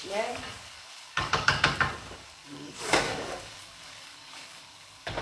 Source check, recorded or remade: remade